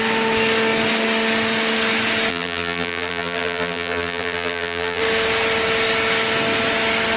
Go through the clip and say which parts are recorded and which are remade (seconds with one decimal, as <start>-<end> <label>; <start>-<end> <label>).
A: 0.0-2.3 recorded; 2.3-5.0 remade; 5.0-7.2 recorded